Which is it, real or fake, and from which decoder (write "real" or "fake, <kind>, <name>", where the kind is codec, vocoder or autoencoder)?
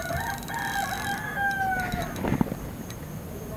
real